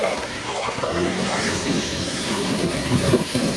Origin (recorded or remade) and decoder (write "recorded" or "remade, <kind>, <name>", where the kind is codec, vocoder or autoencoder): remade, codec, SNAC